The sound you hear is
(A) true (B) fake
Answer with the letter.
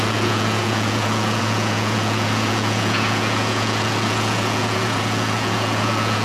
B